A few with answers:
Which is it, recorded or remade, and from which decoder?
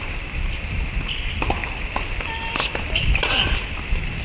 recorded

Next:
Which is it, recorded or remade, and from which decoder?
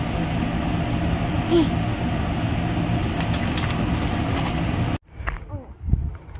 recorded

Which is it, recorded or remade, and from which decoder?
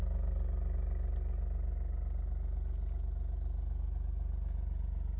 recorded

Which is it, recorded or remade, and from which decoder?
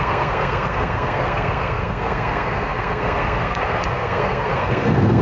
remade, codec, SNAC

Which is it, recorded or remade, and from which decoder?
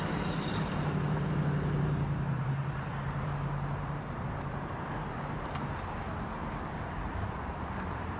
remade, vocoder, BigVGAN v2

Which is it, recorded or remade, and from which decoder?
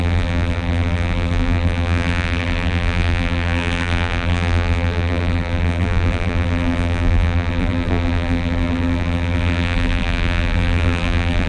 remade, vocoder, BigVGAN v2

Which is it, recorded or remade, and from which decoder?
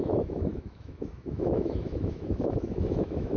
remade, autoencoder, DAC-VAE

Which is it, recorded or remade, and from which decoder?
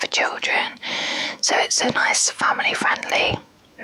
remade, autoencoder, DAC-VAE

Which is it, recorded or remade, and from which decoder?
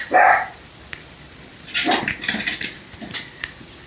remade, vocoder, BigVGAN v2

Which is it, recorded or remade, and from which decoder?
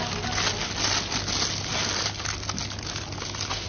recorded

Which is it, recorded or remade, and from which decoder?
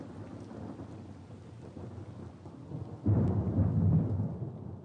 recorded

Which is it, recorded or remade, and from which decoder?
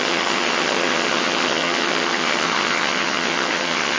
remade, vocoder, HiFi-GAN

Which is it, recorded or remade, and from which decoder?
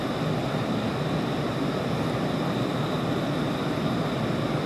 recorded